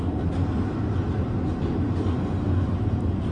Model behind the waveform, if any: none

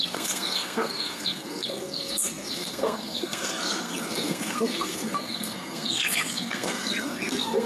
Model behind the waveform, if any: codec, SNAC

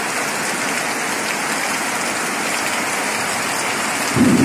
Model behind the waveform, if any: none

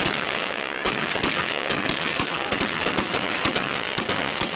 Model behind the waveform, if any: vocoder, WaveNeXt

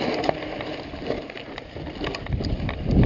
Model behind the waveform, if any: none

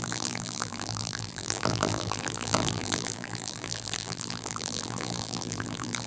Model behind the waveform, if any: vocoder, BigVGAN v2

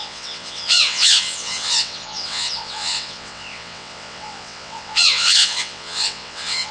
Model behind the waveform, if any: vocoder, WaveNeXt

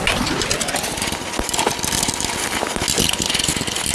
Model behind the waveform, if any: none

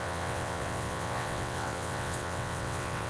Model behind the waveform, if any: vocoder, WaveNeXt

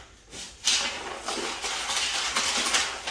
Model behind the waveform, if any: none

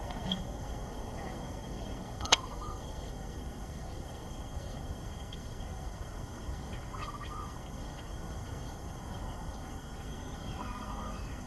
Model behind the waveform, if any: codec, SNAC